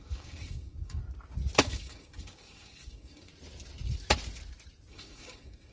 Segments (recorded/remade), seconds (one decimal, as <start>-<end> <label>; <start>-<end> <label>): 0.0-1.0 remade; 1.0-1.6 recorded; 1.6-3.3 remade; 3.3-4.9 recorded; 4.9-5.7 remade